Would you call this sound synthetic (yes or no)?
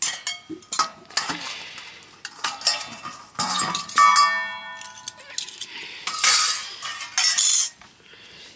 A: no